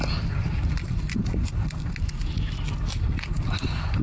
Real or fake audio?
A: real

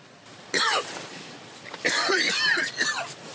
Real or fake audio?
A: fake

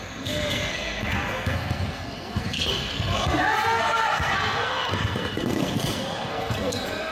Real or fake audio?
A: fake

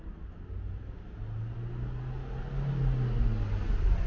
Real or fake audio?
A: real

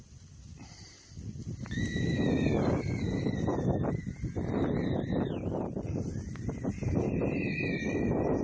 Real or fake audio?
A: fake